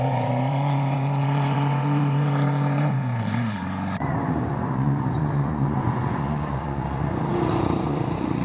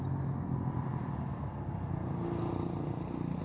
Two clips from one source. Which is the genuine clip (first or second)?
second